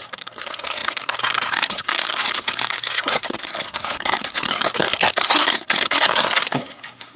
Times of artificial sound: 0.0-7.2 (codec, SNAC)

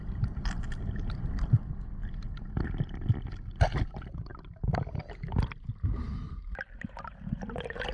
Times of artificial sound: none

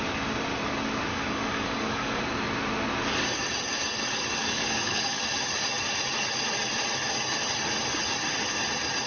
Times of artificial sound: 1.1-2.2 (codec, DAC); 4.4-5.2

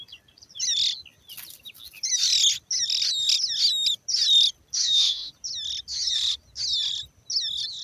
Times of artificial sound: 4.8-5.3 (autoencoder, DAC-VAE)

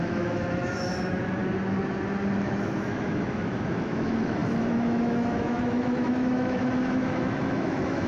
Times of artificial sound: 0.0-1.4 (autoencoder, DAC-VAE); 2.4-8.1

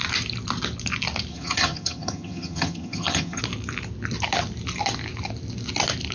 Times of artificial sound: 1.3-3.4 (vocoder, HiFi-GAN)

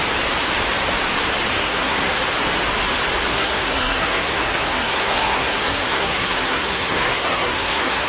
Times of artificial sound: 1.6-2.2 (codec, SNAC); 3.3-8.1